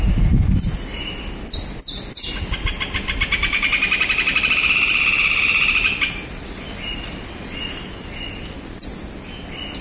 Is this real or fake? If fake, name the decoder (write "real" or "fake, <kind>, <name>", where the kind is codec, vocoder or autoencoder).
real